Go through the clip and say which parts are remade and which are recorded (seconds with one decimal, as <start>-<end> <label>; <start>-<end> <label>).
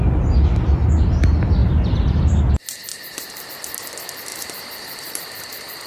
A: 0.0-1.6 recorded; 1.6-2.5 remade; 2.5-2.9 recorded; 2.9-3.5 remade; 3.5-4.3 recorded; 4.3-5.2 remade; 5.2-5.9 recorded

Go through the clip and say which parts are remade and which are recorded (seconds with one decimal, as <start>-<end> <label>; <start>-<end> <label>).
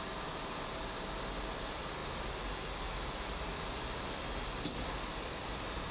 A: 0.0-5.9 recorded